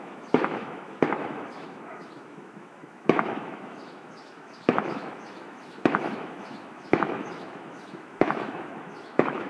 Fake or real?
fake